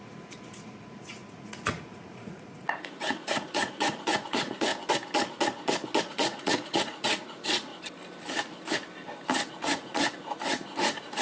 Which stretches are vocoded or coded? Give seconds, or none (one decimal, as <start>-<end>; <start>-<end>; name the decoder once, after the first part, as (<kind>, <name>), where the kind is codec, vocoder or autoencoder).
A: 0.0-4.7 (vocoder, Vocos); 6.0-7.7; 9.5-11.2